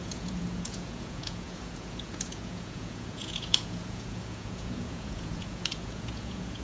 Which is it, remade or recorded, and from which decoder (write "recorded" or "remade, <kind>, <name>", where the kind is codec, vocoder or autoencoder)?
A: remade, vocoder, Vocos